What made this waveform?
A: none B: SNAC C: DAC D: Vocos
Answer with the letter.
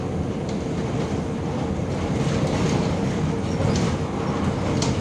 A